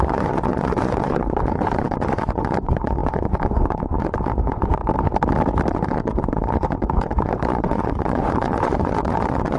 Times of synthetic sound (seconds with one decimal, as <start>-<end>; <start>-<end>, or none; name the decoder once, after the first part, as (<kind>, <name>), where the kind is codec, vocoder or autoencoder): 0.0-4.8 (vocoder, Vocos); 5.7-9.6